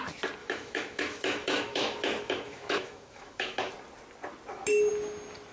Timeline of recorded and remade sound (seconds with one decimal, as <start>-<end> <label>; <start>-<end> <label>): 0.0-0.4 recorded; 0.4-3.7 remade; 3.7-5.5 recorded